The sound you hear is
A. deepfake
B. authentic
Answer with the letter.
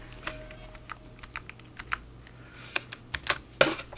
B